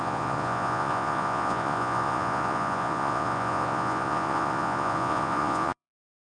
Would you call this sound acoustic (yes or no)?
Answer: no